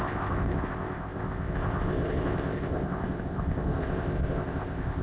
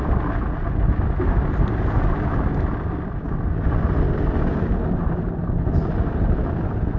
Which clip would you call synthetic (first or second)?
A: first